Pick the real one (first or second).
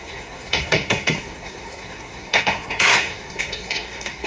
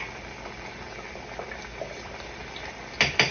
second